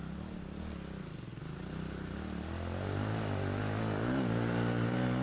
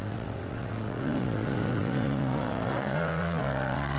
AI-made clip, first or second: second